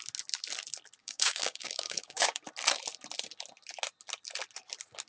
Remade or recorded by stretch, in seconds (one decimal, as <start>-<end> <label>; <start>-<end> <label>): 0.0-1.0 recorded; 1.0-2.4 remade; 2.4-5.1 recorded